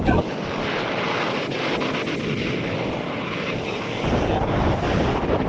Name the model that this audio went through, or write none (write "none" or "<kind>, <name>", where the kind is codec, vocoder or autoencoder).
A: none